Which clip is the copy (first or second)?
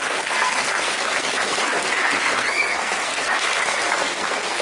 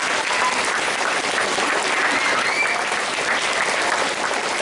first